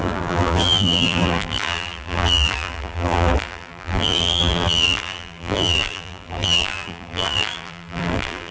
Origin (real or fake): fake